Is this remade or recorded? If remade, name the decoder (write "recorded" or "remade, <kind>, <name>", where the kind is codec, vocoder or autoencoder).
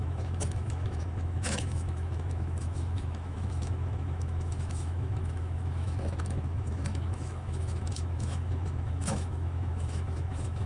remade, autoencoder, DAC-VAE